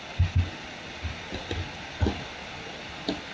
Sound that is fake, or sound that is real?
real